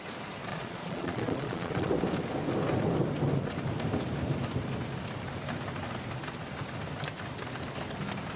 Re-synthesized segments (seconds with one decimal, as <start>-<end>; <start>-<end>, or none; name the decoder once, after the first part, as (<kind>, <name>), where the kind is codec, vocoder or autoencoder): 0.5-1.9 (vocoder, Vocos)